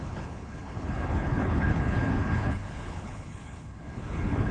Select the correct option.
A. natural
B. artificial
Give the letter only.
B